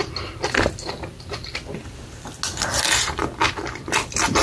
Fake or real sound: real